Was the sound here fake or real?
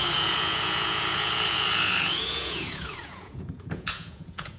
fake